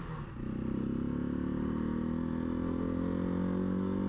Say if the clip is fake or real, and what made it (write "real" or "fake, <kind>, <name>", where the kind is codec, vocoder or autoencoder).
real